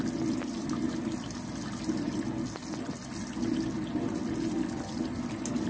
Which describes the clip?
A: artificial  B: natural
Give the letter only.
B